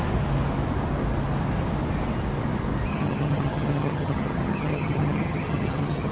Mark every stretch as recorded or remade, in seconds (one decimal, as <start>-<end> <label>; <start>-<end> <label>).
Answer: 0.0-2.9 recorded; 2.9-6.1 remade